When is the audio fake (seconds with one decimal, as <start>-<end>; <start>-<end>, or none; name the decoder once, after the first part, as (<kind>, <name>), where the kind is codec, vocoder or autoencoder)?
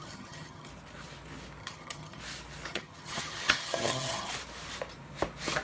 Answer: 0.0-0.7 (vocoder, HiFi-GAN); 1.6-2.2; 2.7-4.3